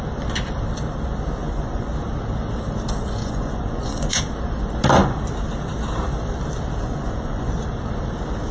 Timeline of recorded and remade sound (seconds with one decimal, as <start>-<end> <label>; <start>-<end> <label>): 0.0-1.4 recorded; 1.4-1.9 remade; 1.9-3.2 recorded; 3.2-4.2 remade; 4.2-6.8 recorded; 6.8-7.5 remade; 7.5-8.5 recorded